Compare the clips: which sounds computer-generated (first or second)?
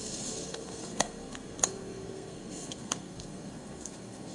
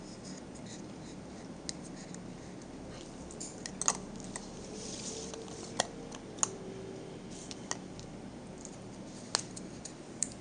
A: first